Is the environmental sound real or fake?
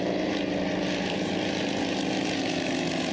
real